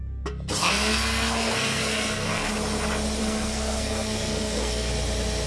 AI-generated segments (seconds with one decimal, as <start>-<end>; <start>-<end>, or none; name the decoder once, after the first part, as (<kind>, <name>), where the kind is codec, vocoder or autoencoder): 0.6-2.5 (codec, SNAC); 3.2-4.9